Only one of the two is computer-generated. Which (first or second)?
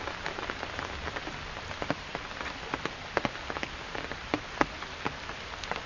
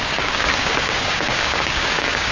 second